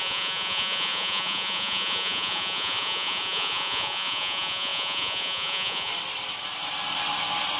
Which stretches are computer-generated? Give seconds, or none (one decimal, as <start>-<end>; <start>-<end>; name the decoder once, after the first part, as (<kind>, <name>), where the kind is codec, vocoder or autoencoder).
0.0-5.9 (vocoder, Vocos)